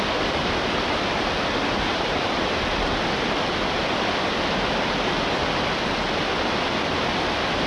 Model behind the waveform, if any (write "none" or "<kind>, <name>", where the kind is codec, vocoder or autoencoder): none